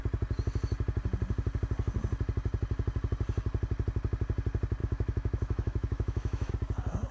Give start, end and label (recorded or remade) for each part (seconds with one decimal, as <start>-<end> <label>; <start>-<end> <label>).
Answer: 0.0-4.8 recorded; 4.8-6.5 remade; 6.5-7.1 recorded